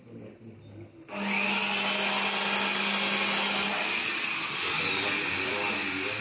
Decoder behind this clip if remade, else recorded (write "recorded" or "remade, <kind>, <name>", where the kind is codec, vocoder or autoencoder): recorded